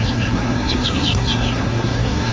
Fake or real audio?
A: fake